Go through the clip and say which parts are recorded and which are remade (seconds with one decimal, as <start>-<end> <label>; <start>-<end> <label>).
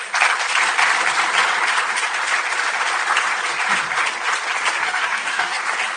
0.0-4.8 recorded; 4.8-5.6 remade; 5.6-6.0 recorded